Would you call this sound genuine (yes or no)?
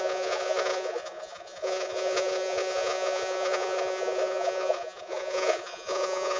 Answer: no